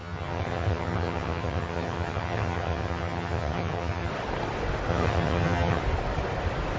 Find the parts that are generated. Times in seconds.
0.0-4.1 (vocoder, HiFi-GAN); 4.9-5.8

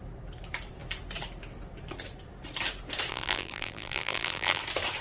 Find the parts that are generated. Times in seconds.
3.1-4.6 (vocoder, BigVGAN v2)

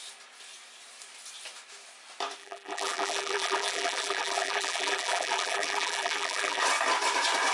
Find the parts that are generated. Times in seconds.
2.4-6.6 (vocoder, BigVGAN v2)

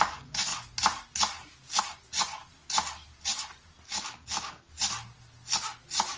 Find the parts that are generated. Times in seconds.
0.0-0.5 (vocoder, Vocos); 1.8-2.4

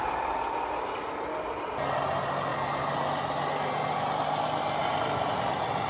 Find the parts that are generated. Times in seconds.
none

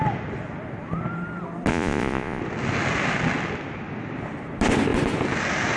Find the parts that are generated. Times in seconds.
1.7-2.4 (vocoder, Vocos)

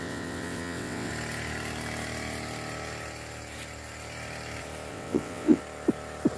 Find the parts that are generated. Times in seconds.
0.0-1.1 (vocoder, WaveNeXt); 4.9-5.6

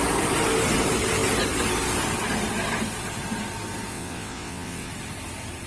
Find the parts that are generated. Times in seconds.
3.9-4.9 (vocoder, WaveNeXt)